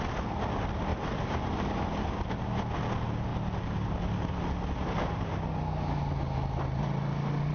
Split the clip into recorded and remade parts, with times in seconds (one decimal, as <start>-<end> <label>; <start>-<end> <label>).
0.0-0.9 recorded; 0.9-1.8 remade; 1.8-7.5 recorded